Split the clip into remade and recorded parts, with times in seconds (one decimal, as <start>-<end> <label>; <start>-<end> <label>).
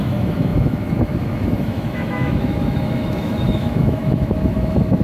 0.0-5.0 remade